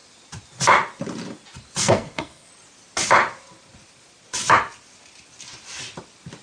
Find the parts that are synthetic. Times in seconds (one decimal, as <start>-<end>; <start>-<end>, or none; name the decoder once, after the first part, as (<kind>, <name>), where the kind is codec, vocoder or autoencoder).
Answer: 1.8-2.5 (codec, SNAC)